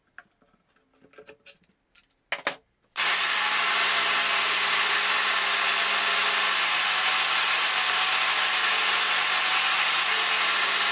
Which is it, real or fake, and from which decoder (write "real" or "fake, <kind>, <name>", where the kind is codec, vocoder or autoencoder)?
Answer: real